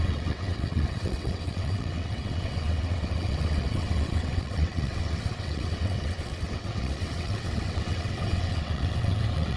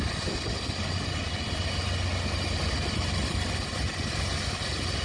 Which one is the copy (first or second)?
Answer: first